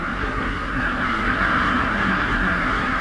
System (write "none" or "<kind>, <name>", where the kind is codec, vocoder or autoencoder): codec, SNAC